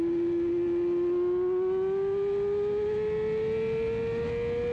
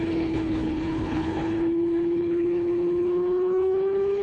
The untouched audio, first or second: first